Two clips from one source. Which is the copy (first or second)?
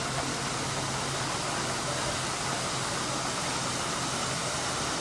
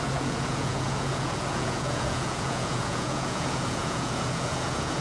second